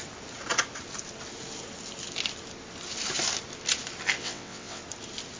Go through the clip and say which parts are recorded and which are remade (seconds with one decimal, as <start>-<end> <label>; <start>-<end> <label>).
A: 0.0-4.2 recorded; 4.2-4.8 remade; 4.8-5.4 recorded